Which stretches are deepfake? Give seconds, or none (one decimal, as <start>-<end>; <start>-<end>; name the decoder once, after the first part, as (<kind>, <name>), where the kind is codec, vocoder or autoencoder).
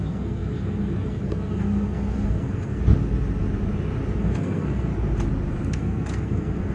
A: 0.0-2.8 (codec, SNAC); 4.2-4.9; 5.5-6.7